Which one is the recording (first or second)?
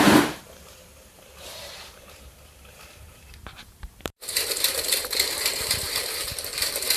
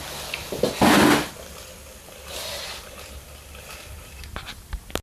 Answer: second